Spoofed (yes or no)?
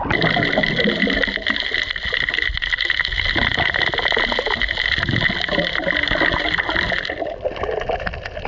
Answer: no